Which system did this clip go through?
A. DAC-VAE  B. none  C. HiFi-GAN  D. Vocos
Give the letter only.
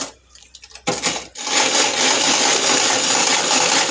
B